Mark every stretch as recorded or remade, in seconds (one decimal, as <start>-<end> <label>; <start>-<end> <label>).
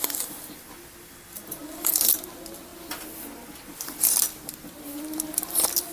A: 0.0-5.9 recorded